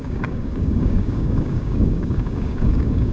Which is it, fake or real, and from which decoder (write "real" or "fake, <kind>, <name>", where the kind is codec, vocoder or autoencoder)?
fake, codec, DAC